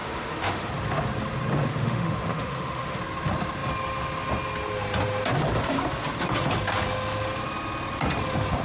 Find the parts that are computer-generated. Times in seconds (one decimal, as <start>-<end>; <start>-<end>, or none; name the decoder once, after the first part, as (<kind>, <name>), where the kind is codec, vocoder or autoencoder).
0.0-0.7 (autoencoder, DAC-VAE); 1.7-3.0